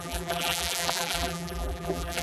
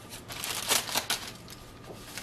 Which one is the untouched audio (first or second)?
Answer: second